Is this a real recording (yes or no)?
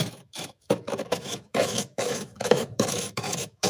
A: no